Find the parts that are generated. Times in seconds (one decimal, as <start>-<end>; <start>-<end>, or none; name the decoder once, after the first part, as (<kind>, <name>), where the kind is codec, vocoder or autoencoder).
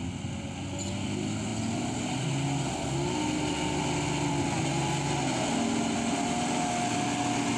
none